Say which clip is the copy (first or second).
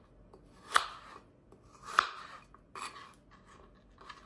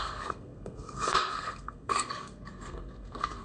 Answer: second